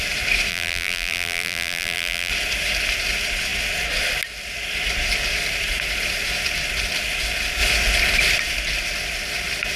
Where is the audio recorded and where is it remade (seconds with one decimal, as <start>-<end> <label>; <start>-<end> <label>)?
0.0-0.5 recorded; 0.5-2.3 remade; 2.3-9.8 recorded

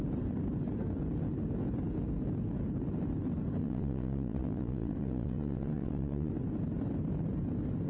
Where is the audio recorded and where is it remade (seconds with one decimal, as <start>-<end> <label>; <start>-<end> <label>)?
0.0-3.6 recorded; 3.6-6.3 remade; 6.3-7.9 recorded

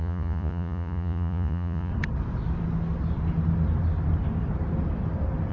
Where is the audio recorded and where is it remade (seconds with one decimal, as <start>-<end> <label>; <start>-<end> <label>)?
0.0-1.9 remade; 1.9-5.5 recorded

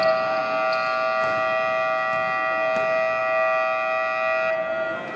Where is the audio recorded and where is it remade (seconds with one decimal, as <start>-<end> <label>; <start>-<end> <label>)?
0.0-5.2 recorded

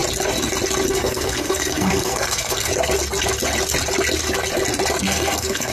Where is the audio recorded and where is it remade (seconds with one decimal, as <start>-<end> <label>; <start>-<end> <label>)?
0.0-0.9 recorded; 0.9-2.7 remade; 2.7-5.0 recorded; 5.0-5.7 remade

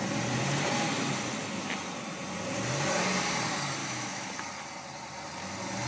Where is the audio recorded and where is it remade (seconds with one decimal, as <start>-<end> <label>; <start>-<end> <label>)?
0.0-3.8 recorded; 3.8-4.3 remade; 4.3-5.9 recorded